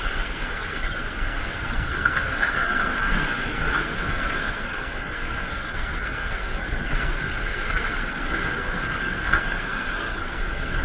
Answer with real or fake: fake